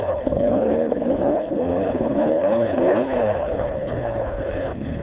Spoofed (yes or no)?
yes